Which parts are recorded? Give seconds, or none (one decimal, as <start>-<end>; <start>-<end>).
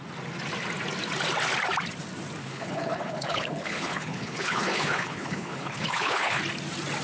0.0-2.4; 6.4-7.0